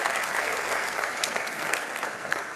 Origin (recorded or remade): remade